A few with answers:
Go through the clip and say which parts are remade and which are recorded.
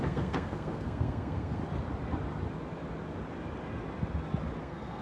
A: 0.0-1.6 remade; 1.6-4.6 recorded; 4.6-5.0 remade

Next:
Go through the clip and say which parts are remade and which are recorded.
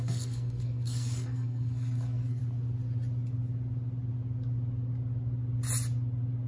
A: 0.0-2.4 remade; 2.4-6.5 recorded